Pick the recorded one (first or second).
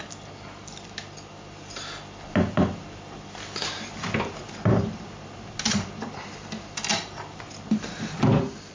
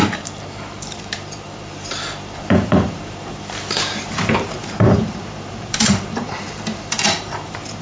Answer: first